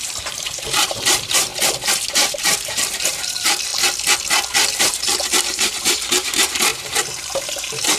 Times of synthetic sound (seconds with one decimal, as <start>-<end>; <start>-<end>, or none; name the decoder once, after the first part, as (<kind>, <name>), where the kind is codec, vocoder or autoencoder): 0.0-1.5 (vocoder, BigVGAN v2); 2.3-3.7; 4.8-8.0

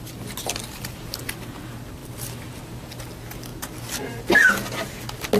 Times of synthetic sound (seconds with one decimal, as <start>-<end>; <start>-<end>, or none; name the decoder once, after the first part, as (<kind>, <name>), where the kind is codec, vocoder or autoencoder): none

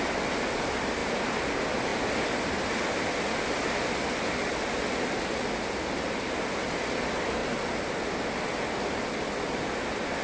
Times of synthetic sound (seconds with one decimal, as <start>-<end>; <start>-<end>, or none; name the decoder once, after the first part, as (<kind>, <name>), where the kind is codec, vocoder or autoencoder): 1.0-1.5 (vocoder, BigVGAN v2); 7.4-8.3